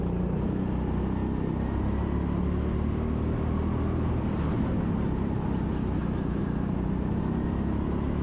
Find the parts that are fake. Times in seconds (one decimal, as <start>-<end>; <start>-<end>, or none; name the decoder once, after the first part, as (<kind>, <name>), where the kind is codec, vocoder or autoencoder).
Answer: 6.4-7.2 (vocoder, BigVGAN v2)